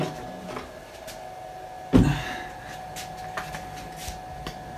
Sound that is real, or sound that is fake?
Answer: real